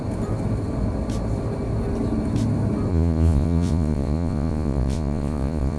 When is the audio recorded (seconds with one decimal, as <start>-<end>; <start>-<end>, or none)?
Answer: 0.0-2.9